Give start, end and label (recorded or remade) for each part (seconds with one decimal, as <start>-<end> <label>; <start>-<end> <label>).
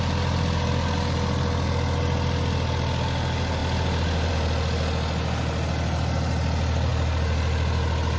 0.0-8.2 recorded